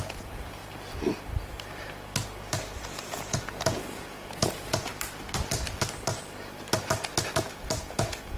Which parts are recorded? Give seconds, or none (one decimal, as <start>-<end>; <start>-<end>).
0.6-2.8; 4.9-7.9